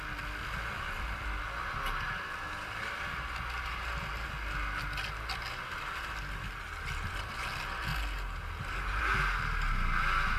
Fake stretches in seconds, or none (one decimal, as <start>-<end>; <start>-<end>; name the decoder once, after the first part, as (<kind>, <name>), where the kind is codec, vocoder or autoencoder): none